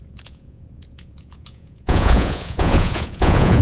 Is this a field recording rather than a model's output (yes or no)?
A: no